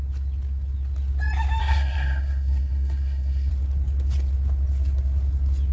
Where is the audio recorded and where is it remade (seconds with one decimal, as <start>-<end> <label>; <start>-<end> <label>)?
0.0-1.6 recorded; 1.6-3.5 remade; 3.5-5.7 recorded